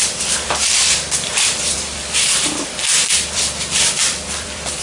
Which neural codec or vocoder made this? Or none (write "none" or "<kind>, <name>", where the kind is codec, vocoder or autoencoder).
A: vocoder, BigVGAN v2